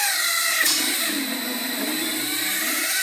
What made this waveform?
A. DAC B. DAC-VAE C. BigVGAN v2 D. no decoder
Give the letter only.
D